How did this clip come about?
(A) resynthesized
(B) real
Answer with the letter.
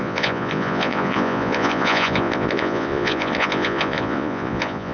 A